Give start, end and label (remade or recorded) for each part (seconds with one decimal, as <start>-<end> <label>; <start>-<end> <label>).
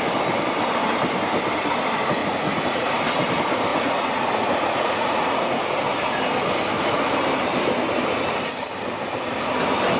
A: 0.0-2.2 recorded; 2.2-3.0 remade; 3.0-3.7 recorded; 3.7-5.6 remade; 5.6-10.0 recorded